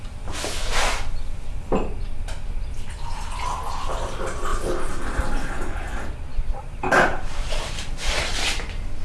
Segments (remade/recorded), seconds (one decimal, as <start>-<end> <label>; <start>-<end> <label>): 0.0-4.5 recorded; 4.5-5.5 remade; 5.5-6.3 recorded; 6.3-8.4 remade; 8.4-9.0 recorded